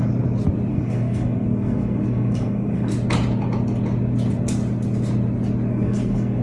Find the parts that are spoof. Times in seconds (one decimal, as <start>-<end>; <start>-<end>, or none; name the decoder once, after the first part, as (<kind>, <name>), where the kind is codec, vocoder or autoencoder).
0.7-2.9 (codec, SNAC); 5.7-6.4